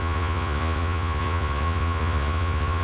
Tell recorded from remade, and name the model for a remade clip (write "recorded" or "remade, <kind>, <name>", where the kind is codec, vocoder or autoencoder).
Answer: remade, vocoder, Vocos